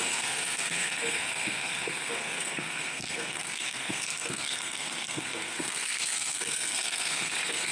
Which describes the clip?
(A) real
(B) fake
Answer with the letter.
B